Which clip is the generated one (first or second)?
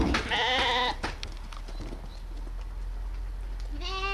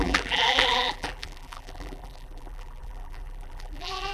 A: second